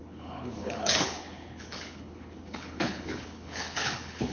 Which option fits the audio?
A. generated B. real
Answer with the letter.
A